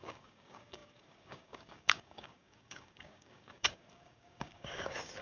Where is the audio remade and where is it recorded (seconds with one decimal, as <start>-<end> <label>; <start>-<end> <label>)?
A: 0.0-5.2 remade

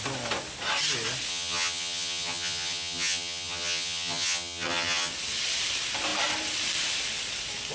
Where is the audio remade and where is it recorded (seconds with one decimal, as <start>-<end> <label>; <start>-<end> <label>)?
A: 0.0-1.3 recorded; 1.3-5.1 remade; 5.1-7.7 recorded